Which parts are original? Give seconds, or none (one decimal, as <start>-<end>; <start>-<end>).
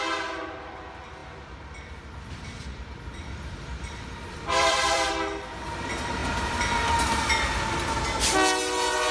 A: 0.0-1.2; 5.1-6.2; 6.8-9.1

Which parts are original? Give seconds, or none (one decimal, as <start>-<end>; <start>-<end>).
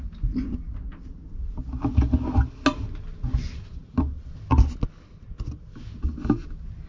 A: 0.0-6.9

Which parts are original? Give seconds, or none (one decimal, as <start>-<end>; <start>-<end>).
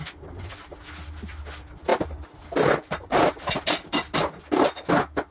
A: 0.0-1.9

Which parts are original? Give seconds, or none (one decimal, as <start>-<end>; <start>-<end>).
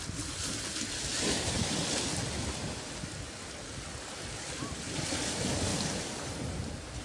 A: 0.0-1.1; 1.8-5.7